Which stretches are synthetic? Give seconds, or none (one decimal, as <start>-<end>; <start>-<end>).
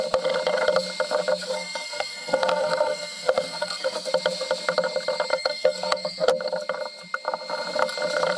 1.4-4.1; 5.3-6.3